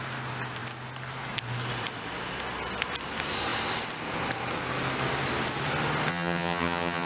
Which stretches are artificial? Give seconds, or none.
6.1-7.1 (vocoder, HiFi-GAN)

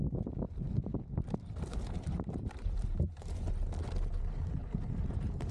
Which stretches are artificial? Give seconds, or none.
1.7-3.2 (vocoder, BigVGAN v2); 4.6-5.5